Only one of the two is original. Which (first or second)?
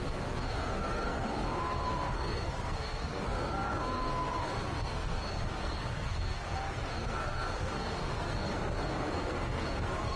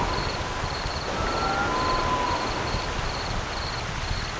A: second